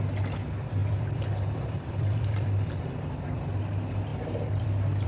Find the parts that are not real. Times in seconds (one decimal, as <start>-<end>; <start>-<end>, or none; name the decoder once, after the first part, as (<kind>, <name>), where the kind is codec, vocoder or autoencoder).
0.8-3.2 (vocoder, BigVGAN v2); 4.1-5.1

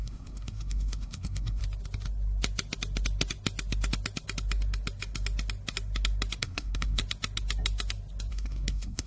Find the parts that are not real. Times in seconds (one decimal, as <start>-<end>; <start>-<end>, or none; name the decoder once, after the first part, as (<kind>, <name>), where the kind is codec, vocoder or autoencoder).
0.0-1.6 (codec, SNAC); 6.4-7.0; 8.3-9.1

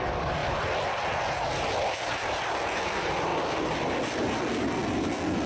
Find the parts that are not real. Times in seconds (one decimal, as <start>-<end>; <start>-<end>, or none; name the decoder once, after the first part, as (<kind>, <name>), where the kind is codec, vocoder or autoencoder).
3.3-4.4 (vocoder, BigVGAN v2)

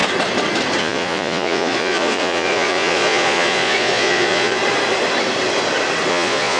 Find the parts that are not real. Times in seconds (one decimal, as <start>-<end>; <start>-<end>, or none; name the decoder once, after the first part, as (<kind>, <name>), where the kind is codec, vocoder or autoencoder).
0.8-4.6 (vocoder, Vocos); 6.1-6.6

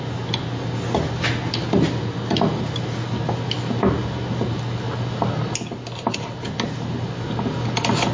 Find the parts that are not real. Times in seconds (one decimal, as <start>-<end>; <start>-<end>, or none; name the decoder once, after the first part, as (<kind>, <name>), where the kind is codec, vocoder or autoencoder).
none